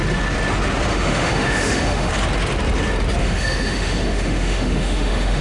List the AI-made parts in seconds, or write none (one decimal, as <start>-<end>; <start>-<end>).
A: 0.9-2.1; 3.2-5.4